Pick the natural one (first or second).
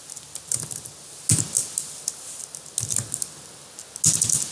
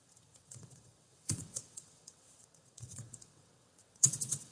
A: first